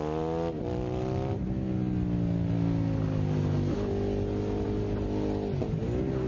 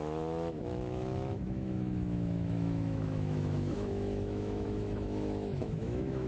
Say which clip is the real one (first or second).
first